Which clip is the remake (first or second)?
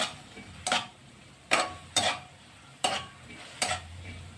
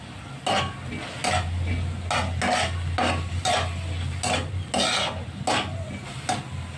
first